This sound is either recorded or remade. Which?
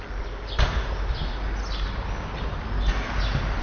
recorded